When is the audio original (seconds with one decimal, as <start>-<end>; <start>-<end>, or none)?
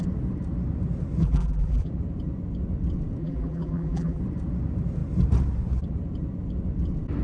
0.0-1.2; 1.9-3.2; 4.2-7.2